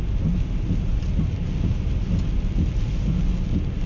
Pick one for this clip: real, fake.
real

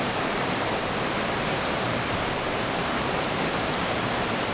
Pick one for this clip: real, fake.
fake